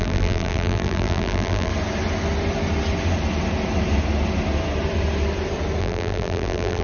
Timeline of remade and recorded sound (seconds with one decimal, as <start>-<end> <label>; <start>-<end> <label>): 0.0-1.7 remade; 1.7-5.8 recorded; 5.8-6.8 remade